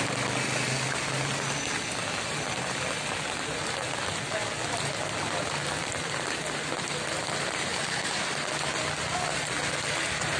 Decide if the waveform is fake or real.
real